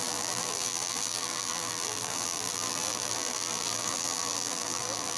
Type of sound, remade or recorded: remade